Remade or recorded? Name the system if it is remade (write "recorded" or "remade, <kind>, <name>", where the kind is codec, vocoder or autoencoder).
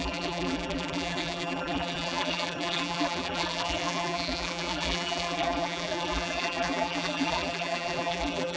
remade, vocoder, BigVGAN v2